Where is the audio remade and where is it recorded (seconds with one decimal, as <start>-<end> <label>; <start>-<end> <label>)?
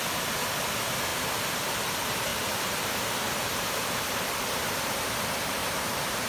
0.0-1.1 recorded; 1.1-1.6 remade; 1.6-2.3 recorded; 2.3-5.1 remade; 5.1-5.6 recorded; 5.6-6.3 remade